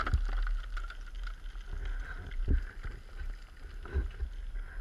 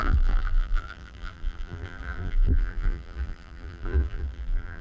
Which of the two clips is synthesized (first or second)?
second